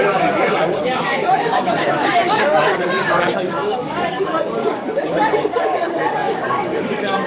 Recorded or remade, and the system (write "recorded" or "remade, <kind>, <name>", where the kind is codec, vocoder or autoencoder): remade, codec, DAC